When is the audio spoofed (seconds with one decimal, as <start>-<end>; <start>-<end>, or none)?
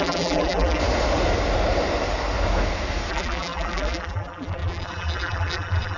0.0-0.8; 3.1-6.0